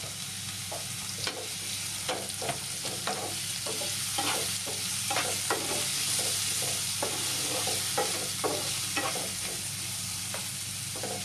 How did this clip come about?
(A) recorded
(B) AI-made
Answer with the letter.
A